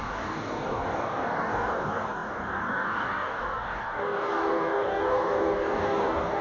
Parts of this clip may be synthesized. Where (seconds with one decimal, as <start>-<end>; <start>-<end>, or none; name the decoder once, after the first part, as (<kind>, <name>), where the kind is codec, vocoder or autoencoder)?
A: 0.0-6.4 (codec, DAC)